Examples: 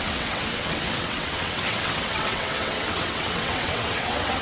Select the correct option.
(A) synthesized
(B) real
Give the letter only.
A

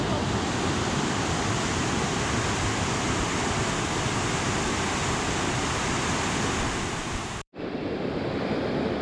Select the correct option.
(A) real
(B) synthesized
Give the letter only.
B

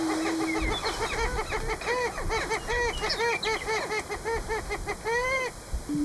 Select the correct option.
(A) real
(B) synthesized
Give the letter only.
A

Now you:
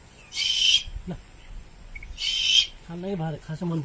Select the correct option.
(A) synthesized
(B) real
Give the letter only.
A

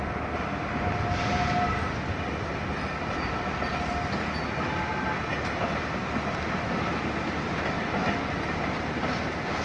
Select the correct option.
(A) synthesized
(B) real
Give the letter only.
B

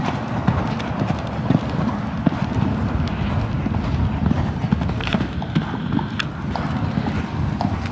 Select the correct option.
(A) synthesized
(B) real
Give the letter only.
B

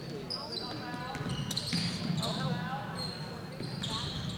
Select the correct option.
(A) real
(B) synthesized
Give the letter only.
A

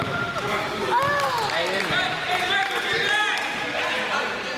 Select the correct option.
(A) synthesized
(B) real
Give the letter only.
B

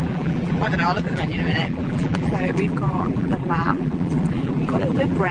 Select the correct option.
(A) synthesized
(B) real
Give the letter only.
A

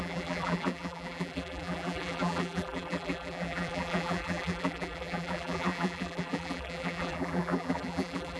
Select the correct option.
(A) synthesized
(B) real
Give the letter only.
A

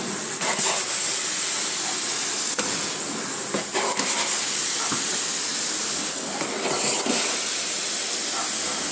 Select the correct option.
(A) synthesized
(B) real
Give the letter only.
B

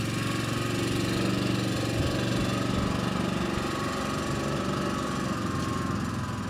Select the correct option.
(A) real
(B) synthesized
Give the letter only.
A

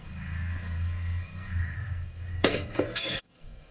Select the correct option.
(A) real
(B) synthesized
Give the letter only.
B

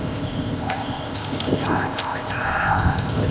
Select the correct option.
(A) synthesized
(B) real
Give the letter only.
A